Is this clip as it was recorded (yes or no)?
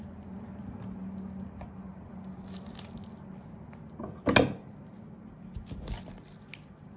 yes